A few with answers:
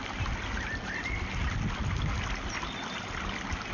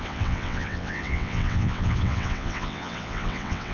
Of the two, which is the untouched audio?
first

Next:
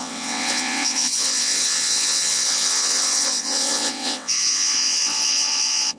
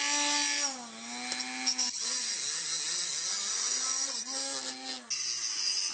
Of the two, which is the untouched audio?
second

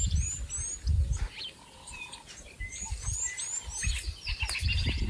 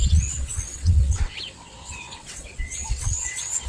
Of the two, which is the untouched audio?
first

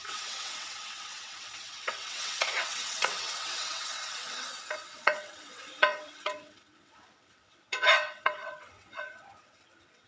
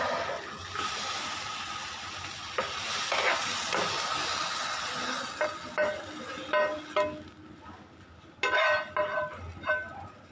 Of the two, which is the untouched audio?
second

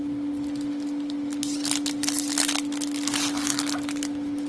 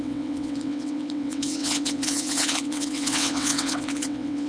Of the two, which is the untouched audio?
first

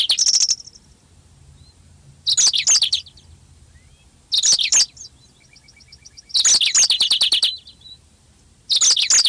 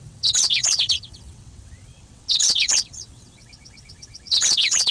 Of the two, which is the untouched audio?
first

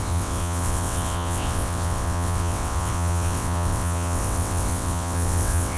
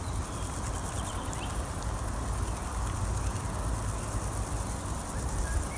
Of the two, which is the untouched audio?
second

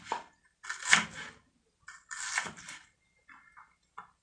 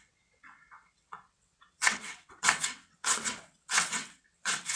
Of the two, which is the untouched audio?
first